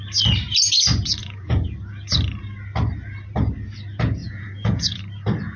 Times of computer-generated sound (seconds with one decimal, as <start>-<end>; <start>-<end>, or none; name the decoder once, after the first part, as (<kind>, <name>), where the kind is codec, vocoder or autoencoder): 1.2-1.8 (vocoder, Vocos); 4.2-5.0